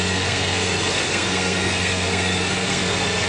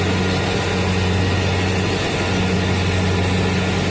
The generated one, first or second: first